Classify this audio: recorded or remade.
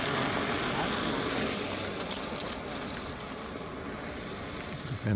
recorded